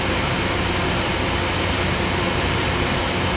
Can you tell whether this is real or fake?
real